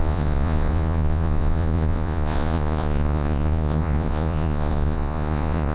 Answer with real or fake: fake